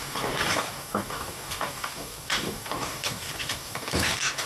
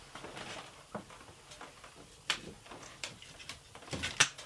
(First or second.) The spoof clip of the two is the first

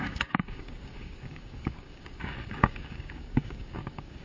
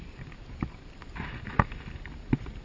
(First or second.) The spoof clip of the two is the first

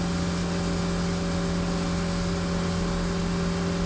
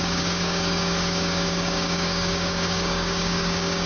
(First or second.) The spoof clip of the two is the second